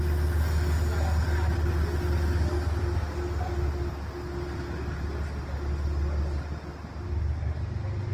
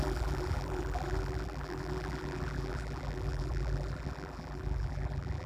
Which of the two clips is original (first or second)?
first